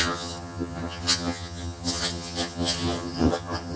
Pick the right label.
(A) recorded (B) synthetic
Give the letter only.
B